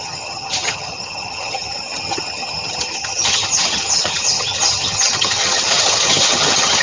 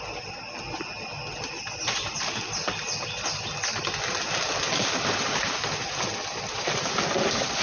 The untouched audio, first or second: second